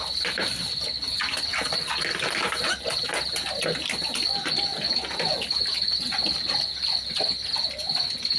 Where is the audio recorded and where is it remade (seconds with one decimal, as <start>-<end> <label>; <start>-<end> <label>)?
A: 0.0-1.5 recorded; 1.5-2.7 remade; 2.7-4.7 recorded; 4.7-7.2 remade; 7.2-8.4 recorded